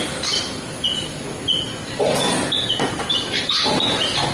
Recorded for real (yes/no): yes